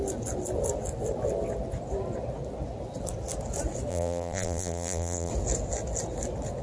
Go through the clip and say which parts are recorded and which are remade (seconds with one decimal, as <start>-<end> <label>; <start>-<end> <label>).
0.0-3.9 recorded; 3.9-5.3 remade; 5.3-6.6 recorded